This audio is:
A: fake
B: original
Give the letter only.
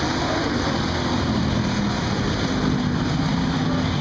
B